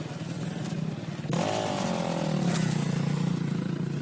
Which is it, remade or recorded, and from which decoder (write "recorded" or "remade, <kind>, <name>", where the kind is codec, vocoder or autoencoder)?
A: recorded